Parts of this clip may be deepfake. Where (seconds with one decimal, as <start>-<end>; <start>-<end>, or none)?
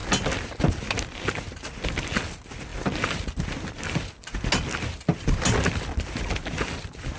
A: none